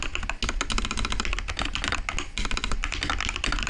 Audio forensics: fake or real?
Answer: real